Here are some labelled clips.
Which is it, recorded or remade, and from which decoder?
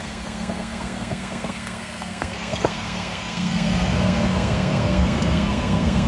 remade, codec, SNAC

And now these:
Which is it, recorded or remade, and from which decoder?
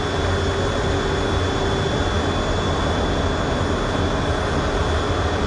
recorded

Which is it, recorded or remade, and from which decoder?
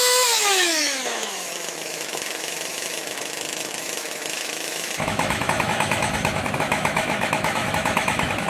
remade, autoencoder, DAC-VAE